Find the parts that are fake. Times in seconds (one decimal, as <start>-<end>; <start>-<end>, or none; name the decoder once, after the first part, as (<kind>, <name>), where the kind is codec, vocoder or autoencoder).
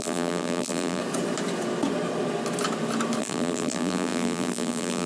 0.0-1.0 (vocoder, BigVGAN v2); 3.2-5.1